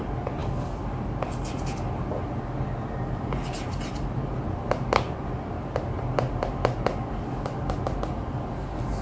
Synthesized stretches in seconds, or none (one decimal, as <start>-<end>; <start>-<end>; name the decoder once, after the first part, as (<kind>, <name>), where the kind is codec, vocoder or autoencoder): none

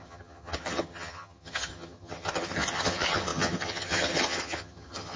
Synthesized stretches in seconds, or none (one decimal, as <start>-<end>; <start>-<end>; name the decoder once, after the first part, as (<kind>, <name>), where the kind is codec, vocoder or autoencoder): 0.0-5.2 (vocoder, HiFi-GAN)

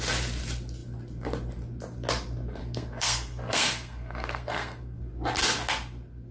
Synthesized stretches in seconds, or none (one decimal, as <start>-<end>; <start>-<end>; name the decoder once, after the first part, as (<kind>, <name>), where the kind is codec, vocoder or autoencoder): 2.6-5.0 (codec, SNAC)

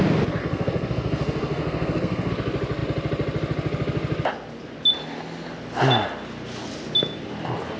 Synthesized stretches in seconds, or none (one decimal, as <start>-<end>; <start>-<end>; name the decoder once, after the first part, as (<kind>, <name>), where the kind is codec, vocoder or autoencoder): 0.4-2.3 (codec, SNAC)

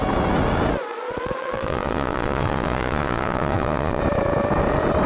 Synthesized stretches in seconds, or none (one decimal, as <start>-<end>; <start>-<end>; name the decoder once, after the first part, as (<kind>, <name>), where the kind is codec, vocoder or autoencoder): 0.9-4.0 (vocoder, Vocos)

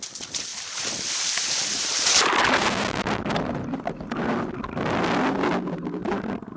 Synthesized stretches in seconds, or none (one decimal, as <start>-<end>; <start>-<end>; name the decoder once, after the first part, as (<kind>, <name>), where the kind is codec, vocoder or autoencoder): none